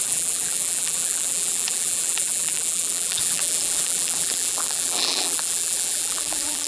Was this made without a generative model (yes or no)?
no